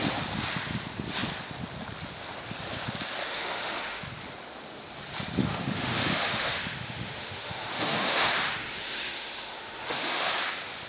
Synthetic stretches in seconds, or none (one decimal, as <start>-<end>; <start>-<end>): 3.2-4.0; 5.4-10.3